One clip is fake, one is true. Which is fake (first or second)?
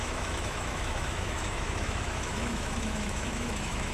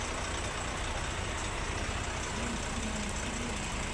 first